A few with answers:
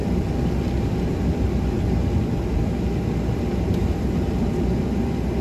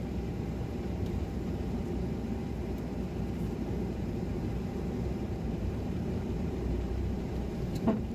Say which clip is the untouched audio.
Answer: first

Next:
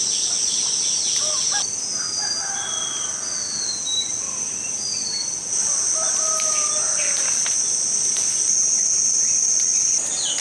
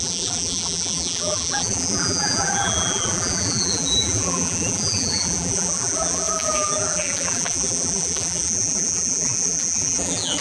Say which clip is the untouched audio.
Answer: first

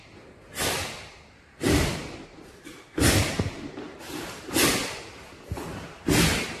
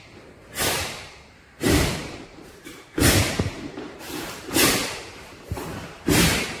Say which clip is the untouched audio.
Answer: first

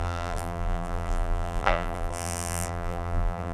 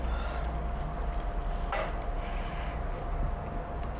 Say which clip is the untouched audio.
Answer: second